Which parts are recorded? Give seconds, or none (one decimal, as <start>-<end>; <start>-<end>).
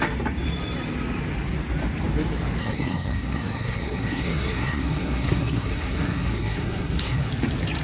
0.0-2.6; 7.3-7.8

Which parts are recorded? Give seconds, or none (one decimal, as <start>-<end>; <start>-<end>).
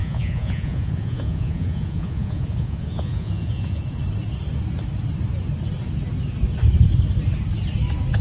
4.0-8.2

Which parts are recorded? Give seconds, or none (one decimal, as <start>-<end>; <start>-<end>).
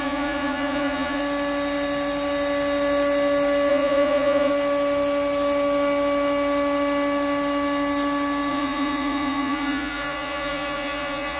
1.2-3.7; 4.5-8.5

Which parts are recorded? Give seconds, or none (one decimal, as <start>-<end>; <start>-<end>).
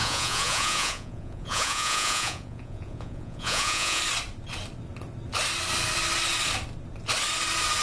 4.0-7.8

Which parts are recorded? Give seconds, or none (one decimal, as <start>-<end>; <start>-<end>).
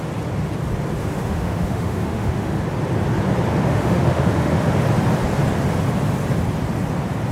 0.0-1.0; 2.6-3.5; 4.7-7.3